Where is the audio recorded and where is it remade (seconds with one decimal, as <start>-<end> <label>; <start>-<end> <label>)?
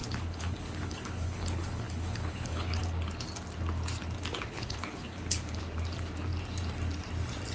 0.0-2.8 remade; 2.8-4.5 recorded; 4.5-5.6 remade; 5.6-7.5 recorded